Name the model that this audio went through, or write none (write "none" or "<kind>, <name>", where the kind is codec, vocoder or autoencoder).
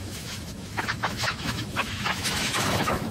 autoencoder, DAC-VAE